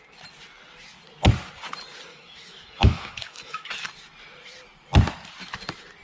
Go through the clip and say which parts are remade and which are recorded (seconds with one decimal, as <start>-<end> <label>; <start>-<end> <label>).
0.0-2.1 recorded; 2.1-3.7 remade; 3.7-6.0 recorded

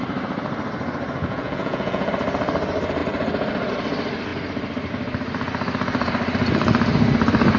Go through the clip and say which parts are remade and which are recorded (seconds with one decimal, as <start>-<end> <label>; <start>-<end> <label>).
0.0-1.2 recorded; 1.2-2.1 remade; 2.1-7.6 recorded

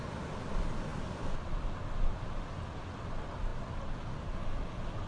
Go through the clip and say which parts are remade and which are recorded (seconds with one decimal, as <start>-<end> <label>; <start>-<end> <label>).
0.0-5.1 recorded

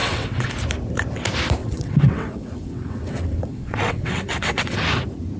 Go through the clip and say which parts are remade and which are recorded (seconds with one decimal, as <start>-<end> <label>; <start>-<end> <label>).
0.0-0.5 remade; 0.5-1.6 recorded; 1.6-4.8 remade; 4.8-5.4 recorded